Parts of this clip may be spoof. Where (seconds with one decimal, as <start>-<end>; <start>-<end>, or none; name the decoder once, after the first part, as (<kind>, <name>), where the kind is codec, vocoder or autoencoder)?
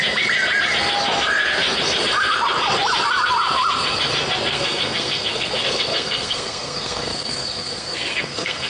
4.5-8.7 (codec, SNAC)